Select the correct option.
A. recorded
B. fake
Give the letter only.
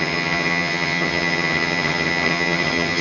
B